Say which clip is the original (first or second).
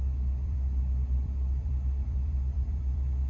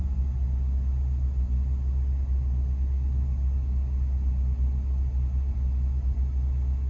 second